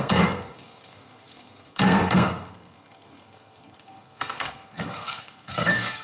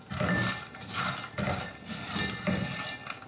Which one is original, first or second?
second